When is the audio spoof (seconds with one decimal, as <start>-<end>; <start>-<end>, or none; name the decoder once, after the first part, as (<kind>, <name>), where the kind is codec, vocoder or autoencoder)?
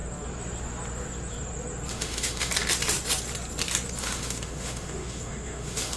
1.9-2.5 (autoencoder, DAC-VAE); 4.0-6.0